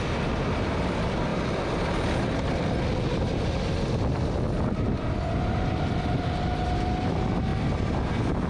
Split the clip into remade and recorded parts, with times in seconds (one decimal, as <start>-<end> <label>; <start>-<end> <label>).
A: 0.0-8.5 recorded